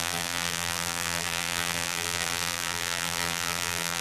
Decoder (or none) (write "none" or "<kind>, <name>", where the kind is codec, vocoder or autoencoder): vocoder, BigVGAN v2